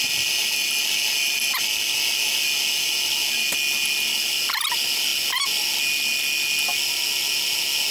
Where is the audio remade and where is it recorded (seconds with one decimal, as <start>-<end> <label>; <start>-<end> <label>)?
0.0-7.9 recorded